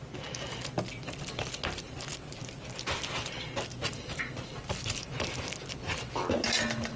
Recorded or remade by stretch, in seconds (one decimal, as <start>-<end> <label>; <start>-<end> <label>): 0.0-7.0 recorded